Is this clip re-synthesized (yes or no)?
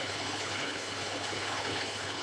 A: yes